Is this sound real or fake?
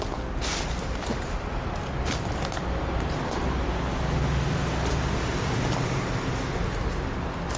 real